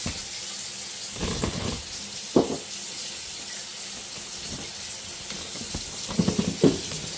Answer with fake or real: real